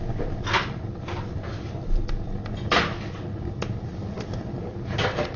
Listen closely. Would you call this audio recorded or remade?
recorded